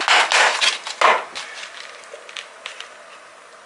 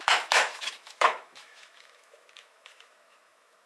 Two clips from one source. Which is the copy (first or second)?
second